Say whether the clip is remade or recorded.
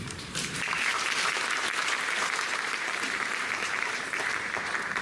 remade